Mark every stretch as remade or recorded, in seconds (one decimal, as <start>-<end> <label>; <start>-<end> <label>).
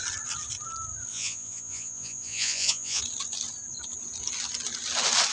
0.0-1.1 recorded; 1.1-3.0 remade; 3.0-5.3 recorded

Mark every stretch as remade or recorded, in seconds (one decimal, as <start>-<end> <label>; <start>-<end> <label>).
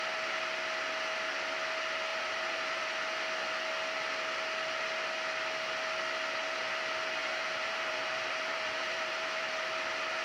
0.0-2.1 recorded; 2.1-2.9 remade; 2.9-7.2 recorded; 7.2-9.6 remade; 9.6-10.2 recorded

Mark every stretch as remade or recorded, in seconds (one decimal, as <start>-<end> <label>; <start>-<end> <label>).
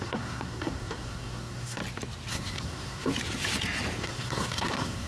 0.0-1.8 remade; 1.8-2.3 recorded; 2.3-3.1 remade; 3.1-4.0 recorded; 4.0-5.1 remade